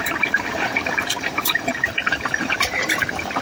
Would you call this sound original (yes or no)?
no